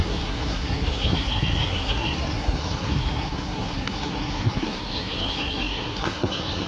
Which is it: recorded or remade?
remade